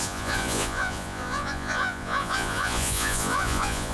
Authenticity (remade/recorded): remade